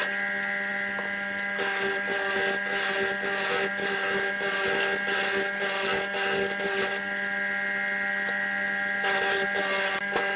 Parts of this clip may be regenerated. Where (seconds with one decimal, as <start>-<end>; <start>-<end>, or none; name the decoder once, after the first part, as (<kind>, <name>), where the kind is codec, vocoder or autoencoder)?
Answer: none